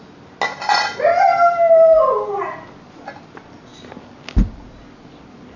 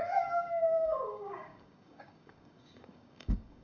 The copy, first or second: second